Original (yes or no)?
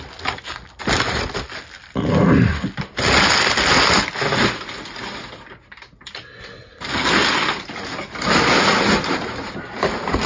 yes